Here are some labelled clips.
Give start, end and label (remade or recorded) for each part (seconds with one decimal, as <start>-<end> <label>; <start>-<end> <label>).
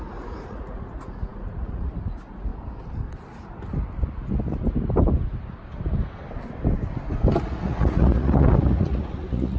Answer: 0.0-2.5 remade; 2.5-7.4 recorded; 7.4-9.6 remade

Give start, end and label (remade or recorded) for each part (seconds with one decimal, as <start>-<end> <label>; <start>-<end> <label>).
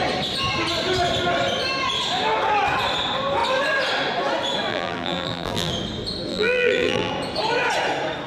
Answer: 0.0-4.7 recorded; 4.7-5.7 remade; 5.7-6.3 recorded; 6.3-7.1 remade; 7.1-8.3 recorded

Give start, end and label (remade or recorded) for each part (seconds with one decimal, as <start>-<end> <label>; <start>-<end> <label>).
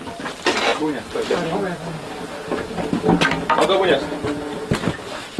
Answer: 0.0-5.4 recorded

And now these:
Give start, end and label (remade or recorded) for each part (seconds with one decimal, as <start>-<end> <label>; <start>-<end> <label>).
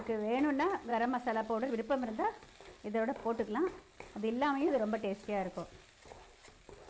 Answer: 0.0-6.9 recorded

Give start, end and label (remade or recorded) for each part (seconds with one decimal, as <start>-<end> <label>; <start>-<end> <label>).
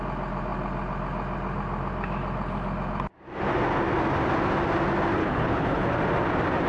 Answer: 0.0-5.2 recorded; 5.2-5.9 remade; 5.9-6.7 recorded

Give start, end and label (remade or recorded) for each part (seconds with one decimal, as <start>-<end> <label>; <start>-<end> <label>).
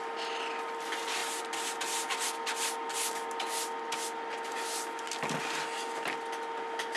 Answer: 0.0-7.0 recorded